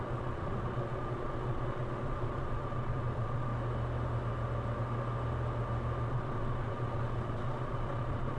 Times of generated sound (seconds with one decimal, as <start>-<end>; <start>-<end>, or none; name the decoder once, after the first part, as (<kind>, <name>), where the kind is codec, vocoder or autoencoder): 0.0-3.5 (vocoder, Vocos); 6.1-8.4